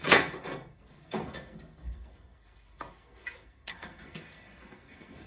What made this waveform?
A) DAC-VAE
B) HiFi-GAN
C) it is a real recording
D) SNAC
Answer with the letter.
D